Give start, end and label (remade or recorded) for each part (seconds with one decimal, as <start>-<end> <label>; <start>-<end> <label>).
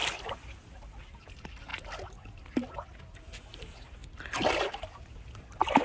0.0-5.8 recorded